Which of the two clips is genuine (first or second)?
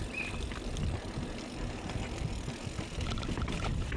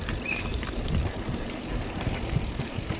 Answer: first